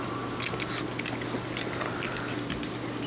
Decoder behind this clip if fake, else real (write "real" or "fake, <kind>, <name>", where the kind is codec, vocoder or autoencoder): real